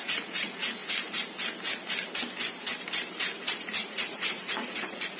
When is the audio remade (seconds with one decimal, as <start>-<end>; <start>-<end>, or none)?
0.0-0.8; 3.9-5.2